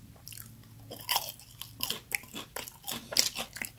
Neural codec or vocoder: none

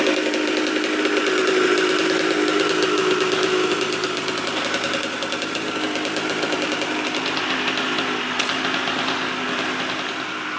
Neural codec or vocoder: none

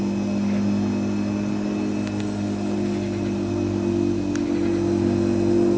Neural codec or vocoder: none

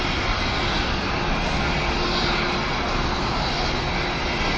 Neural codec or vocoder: none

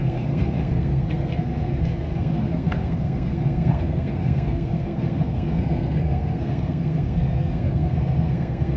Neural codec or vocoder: codec, SNAC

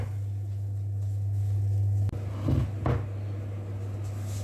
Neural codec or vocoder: none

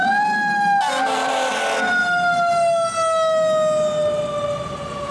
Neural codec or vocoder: none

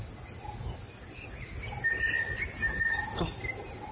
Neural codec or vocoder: none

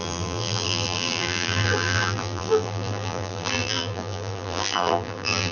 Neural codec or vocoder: vocoder, BigVGAN v2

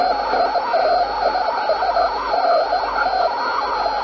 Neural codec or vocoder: none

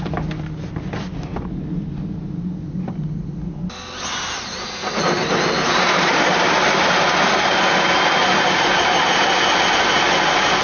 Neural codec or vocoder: none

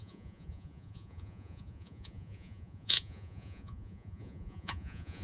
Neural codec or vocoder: vocoder, Vocos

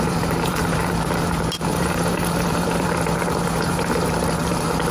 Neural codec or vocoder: vocoder, BigVGAN v2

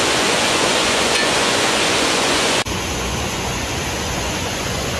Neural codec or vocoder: vocoder, Vocos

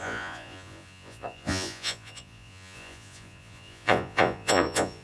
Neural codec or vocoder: vocoder, Vocos